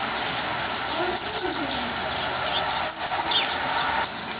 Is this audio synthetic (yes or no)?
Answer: no